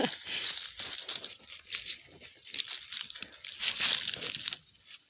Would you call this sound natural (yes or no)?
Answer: yes